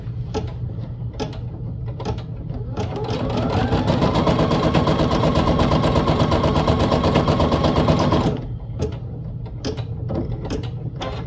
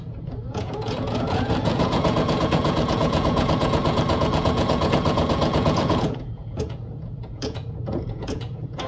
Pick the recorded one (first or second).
first